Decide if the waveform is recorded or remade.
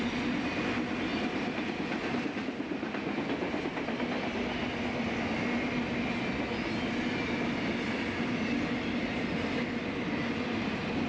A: recorded